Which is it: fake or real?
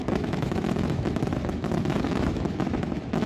fake